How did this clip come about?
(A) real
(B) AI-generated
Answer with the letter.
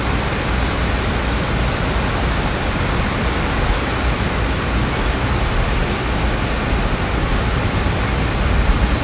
A